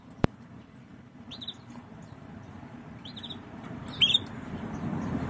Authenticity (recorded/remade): remade